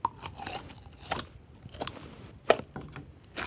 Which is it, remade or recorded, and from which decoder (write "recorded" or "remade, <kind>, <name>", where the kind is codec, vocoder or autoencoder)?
recorded